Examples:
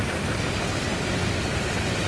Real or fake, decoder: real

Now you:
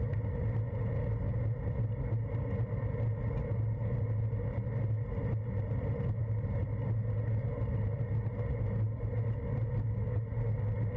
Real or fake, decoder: real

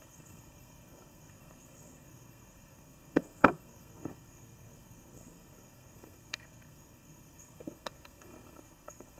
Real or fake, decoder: fake, codec, SNAC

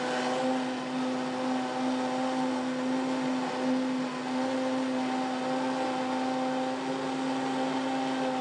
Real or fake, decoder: real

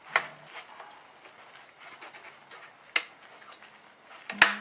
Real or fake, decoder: real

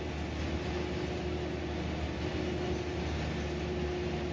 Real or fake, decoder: real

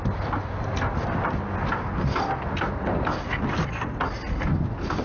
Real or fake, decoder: real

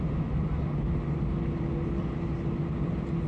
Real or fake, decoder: real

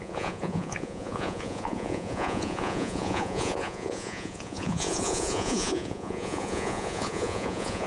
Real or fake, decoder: fake, vocoder, Vocos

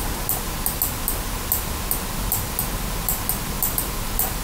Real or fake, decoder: real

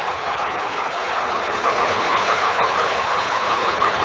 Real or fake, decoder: fake, codec, HILCodec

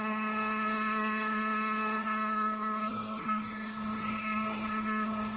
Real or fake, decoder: fake, codec, SNAC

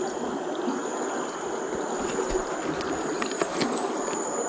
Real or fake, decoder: real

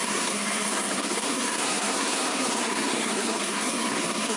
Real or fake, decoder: fake, codec, SNAC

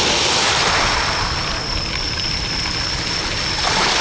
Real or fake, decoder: real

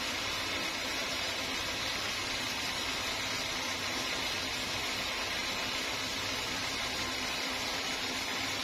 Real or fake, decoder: real